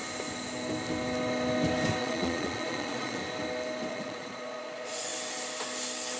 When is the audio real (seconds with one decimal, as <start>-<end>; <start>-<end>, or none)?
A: 0.0-2.0; 3.2-3.9; 5.1-6.2